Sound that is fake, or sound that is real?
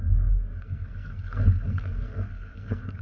fake